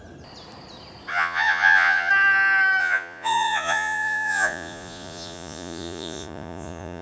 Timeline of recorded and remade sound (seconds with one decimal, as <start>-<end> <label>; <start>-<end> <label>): 0.0-1.1 recorded; 1.1-2.1 remade; 2.1-2.8 recorded; 2.8-7.0 remade

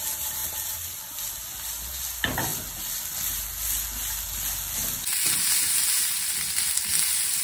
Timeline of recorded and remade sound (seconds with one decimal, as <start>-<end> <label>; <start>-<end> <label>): 0.0-7.4 recorded

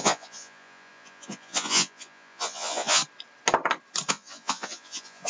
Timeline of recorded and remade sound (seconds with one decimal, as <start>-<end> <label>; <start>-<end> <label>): 0.0-3.0 remade; 3.0-4.1 recorded; 4.1-5.3 remade

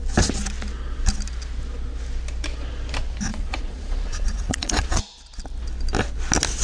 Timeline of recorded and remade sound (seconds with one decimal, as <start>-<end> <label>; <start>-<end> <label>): 0.0-3.3 recorded; 3.3-5.0 remade; 5.0-6.6 recorded

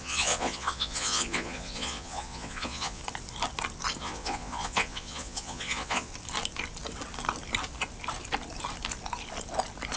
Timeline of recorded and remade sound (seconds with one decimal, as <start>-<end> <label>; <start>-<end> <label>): 0.0-3.0 remade; 3.0-4.0 recorded; 4.0-6.1 remade; 6.1-10.0 recorded